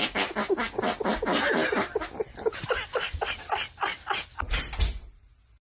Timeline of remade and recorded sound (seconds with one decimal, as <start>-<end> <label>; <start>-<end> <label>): 0.0-5.6 recorded